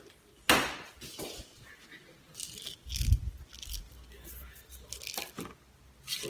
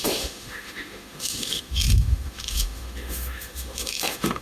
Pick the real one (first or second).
first